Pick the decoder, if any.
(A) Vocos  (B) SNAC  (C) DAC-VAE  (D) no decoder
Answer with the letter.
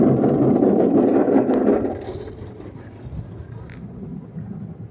D